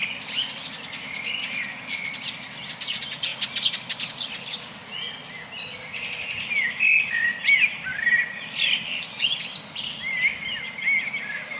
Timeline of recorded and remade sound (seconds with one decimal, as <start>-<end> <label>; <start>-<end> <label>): 0.0-11.6 recorded